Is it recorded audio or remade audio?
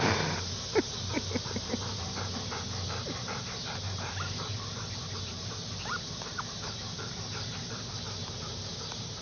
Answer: remade